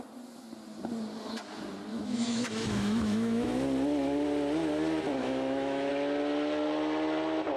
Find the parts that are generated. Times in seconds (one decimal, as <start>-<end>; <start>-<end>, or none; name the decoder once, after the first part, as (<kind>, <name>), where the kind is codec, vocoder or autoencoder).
1.9-3.5 (autoencoder, DAC-VAE); 5.2-5.9

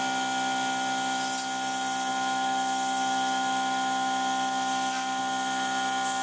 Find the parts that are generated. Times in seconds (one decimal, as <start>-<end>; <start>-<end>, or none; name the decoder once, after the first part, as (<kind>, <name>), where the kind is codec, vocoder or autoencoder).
none

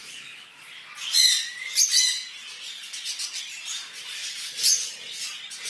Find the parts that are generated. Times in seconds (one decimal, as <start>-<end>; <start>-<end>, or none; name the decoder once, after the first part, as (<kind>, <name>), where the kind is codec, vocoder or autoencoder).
0.0-0.6 (autoencoder, DAC-VAE)

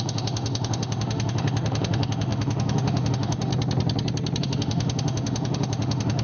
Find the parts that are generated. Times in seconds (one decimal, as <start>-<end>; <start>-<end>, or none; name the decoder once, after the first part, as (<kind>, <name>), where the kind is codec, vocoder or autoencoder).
0.0-3.5 (autoencoder, DAC-VAE); 4.4-6.2

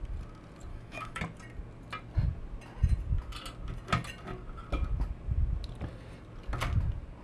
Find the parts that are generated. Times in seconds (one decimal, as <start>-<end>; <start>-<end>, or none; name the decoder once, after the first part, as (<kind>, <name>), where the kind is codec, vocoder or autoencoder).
0.7-1.2 (autoencoder, DAC-VAE)